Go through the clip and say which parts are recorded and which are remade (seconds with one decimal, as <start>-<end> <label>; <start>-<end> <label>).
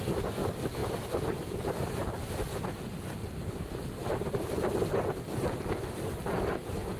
0.0-3.2 recorded; 3.2-4.5 remade; 4.5-7.0 recorded